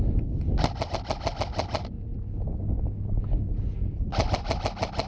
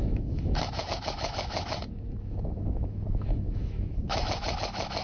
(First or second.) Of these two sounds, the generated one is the second